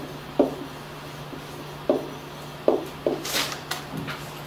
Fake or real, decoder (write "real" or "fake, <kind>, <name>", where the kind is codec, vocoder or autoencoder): real